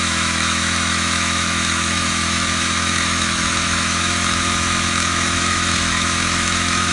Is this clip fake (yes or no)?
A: yes